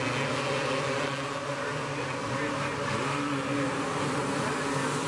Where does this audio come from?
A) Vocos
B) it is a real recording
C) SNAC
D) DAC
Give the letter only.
B